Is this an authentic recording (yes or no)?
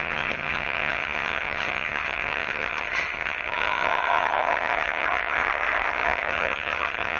no